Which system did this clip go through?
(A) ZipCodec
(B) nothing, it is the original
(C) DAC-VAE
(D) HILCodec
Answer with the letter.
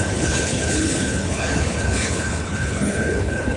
D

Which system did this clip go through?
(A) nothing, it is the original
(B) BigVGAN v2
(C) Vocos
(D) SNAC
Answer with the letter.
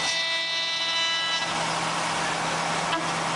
A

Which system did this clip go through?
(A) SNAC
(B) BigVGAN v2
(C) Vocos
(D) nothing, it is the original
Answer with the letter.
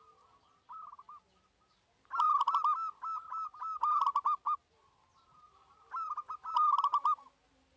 D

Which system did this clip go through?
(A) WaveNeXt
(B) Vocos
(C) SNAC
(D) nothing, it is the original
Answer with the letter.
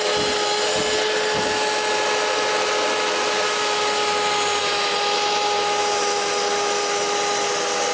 D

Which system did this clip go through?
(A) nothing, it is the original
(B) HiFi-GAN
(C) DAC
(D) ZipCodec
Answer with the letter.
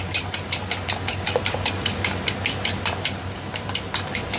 A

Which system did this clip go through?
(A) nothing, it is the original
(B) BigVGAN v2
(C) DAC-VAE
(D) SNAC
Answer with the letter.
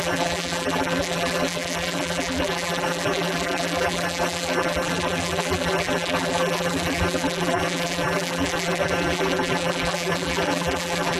B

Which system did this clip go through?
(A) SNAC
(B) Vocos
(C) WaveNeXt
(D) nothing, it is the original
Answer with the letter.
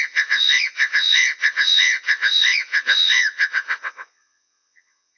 C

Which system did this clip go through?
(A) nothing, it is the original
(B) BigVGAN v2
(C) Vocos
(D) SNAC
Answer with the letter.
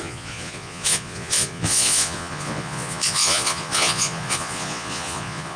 C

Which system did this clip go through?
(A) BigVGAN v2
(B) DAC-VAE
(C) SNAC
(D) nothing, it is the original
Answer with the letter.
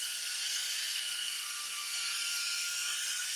C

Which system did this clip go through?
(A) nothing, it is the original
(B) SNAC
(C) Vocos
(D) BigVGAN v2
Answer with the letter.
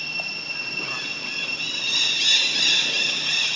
A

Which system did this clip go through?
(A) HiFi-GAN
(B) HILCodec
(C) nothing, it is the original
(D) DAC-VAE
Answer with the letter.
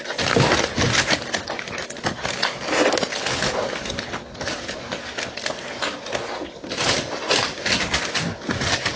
C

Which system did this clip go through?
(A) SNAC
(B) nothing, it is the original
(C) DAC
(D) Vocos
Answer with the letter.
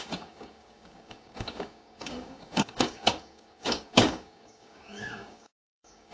C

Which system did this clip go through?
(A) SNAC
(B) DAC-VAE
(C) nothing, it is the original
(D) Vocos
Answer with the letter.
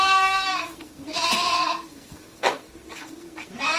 A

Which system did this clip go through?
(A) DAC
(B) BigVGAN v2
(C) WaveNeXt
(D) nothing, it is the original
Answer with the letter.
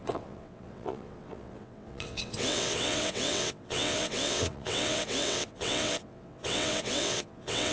C